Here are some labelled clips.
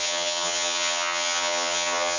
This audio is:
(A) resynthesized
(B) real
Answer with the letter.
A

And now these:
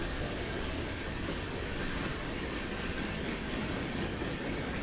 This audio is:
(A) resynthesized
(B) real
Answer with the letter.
A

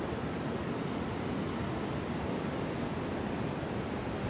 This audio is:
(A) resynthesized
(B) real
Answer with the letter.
B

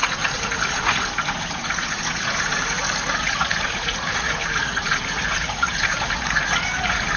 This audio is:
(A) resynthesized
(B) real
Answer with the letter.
A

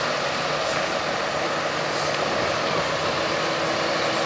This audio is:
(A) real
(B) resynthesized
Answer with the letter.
A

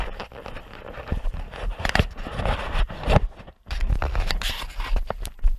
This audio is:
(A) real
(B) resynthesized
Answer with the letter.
B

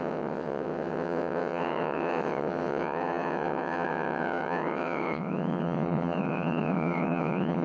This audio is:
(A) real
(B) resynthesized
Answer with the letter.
B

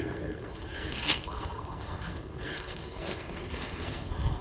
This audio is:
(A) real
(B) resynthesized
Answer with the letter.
B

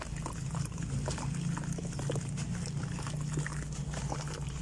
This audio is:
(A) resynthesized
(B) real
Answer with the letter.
B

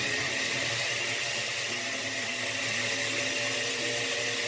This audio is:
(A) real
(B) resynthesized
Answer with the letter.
A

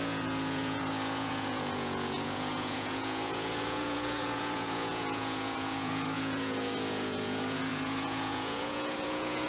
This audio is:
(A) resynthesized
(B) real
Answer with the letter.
A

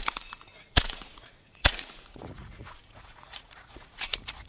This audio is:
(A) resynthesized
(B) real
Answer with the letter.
A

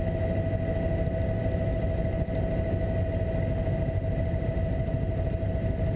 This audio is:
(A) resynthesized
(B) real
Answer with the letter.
B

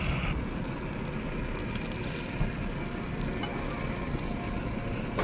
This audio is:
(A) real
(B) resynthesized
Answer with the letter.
A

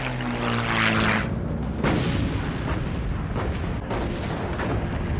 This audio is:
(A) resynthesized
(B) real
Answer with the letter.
B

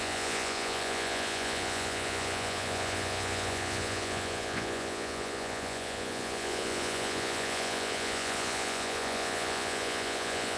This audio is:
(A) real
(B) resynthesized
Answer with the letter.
B